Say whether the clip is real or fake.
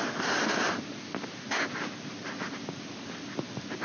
real